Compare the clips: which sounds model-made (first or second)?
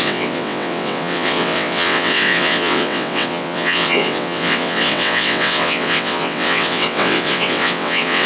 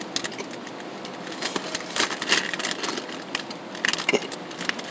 first